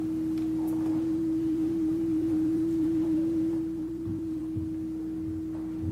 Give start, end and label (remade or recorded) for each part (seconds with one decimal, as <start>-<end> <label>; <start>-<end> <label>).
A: 0.0-0.9 recorded; 0.9-4.4 remade; 4.4-5.9 recorded